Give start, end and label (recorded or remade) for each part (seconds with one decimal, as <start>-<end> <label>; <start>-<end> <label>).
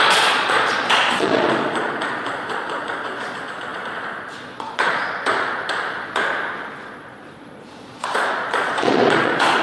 0.0-9.6 remade